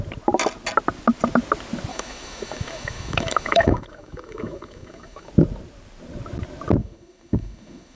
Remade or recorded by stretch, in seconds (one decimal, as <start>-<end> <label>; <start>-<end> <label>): 0.0-1.9 recorded; 1.9-5.3 remade; 5.3-6.8 recorded; 6.8-8.0 remade

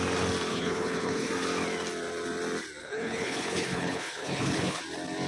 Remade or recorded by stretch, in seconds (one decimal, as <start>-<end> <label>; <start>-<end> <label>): 0.0-0.5 recorded; 0.5-1.3 remade; 1.3-2.8 recorded; 2.8-4.8 remade; 4.8-5.3 recorded

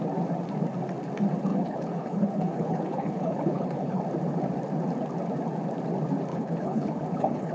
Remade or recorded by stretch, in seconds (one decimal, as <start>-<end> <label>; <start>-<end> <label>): 0.0-1.5 recorded; 1.5-4.0 remade; 4.0-6.3 recorded; 6.3-7.5 remade

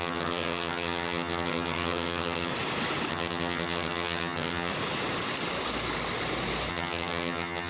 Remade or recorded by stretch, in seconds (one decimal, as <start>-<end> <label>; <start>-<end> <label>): 0.0-2.5 remade; 2.5-3.1 recorded; 3.1-4.7 remade; 4.7-6.7 recorded; 6.7-7.7 remade

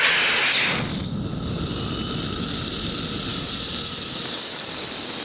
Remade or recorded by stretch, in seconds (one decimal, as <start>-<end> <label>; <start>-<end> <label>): 0.0-3.3 recorded; 3.3-4.8 remade; 4.8-5.2 recorded

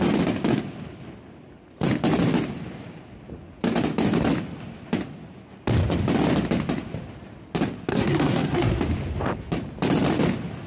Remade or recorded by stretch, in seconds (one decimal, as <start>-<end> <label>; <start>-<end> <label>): 0.0-7.9 recorded; 7.9-8.8 remade; 8.8-10.7 recorded